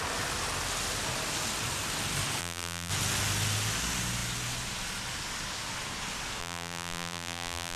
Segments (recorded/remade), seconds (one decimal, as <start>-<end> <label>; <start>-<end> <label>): 0.0-2.4 recorded; 2.4-2.9 remade; 2.9-6.4 recorded; 6.4-7.8 remade